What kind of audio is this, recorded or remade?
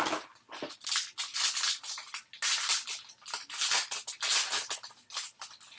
recorded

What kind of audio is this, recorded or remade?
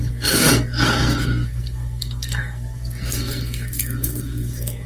remade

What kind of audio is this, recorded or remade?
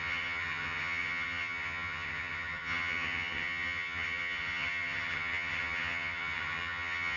remade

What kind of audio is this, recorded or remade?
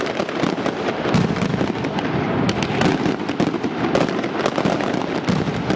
recorded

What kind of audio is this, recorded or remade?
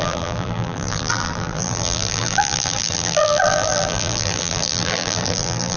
remade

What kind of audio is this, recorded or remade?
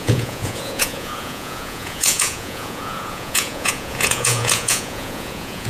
remade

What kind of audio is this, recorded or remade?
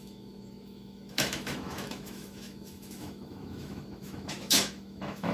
remade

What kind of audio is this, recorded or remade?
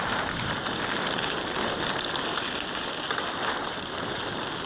recorded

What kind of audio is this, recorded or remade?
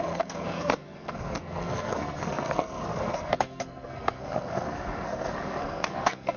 remade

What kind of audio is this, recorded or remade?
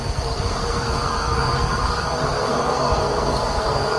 remade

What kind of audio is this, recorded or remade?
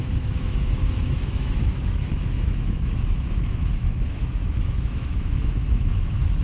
remade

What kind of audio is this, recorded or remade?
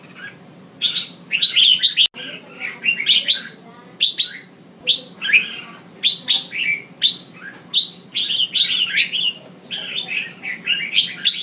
recorded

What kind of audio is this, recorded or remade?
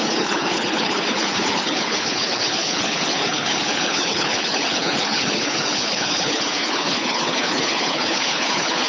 remade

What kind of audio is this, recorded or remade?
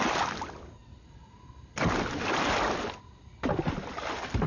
recorded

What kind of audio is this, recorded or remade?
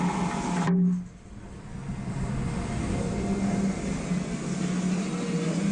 recorded